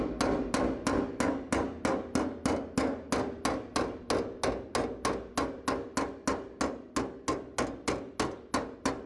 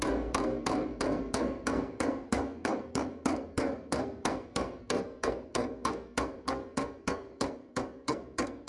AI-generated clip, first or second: second